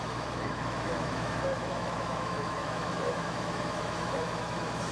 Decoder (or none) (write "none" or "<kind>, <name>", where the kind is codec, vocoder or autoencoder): autoencoder, DAC-VAE